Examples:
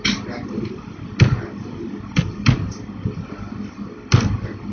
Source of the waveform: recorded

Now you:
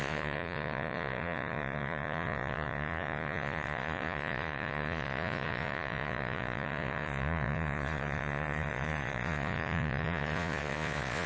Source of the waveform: remade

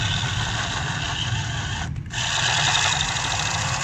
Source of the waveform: recorded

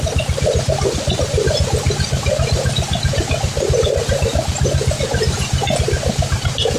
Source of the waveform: recorded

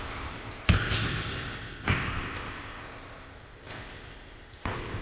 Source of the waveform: remade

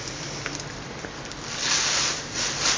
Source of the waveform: recorded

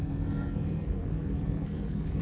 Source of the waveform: remade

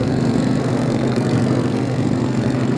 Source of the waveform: remade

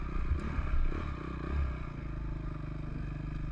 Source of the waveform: recorded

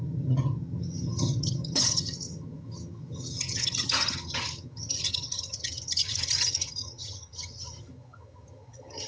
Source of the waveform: remade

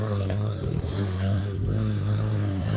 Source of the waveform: remade